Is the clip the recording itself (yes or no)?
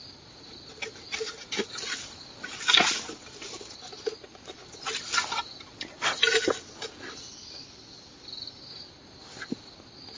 yes